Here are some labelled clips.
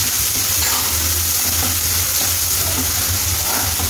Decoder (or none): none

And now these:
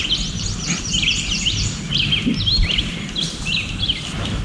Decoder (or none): vocoder, BigVGAN v2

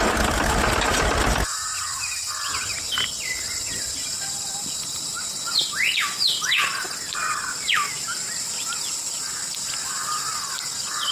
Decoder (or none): none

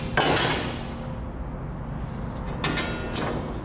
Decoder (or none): none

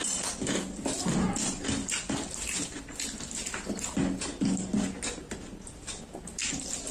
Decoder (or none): none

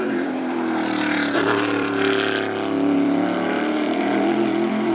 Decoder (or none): vocoder, BigVGAN v2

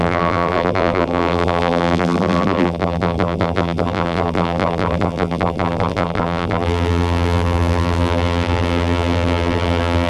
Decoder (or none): vocoder, BigVGAN v2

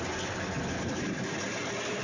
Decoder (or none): none